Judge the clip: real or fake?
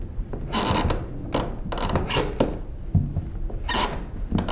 real